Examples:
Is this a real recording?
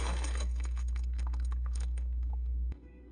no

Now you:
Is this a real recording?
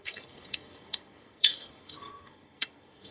no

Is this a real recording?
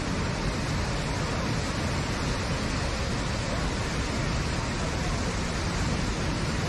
yes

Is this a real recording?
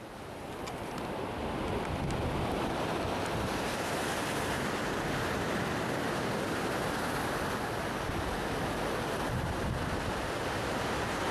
yes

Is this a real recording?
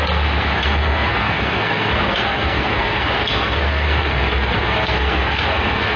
no